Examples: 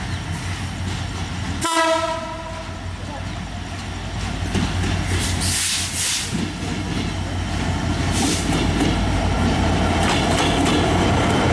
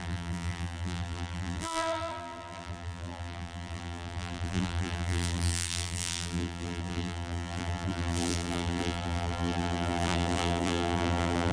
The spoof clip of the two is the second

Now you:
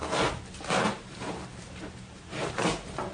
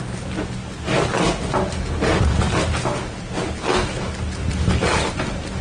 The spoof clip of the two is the first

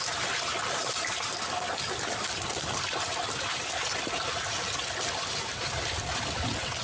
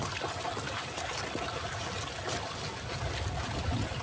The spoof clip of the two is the first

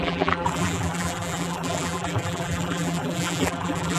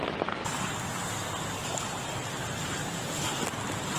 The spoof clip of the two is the first